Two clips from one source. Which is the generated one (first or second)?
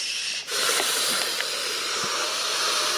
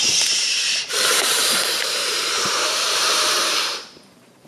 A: second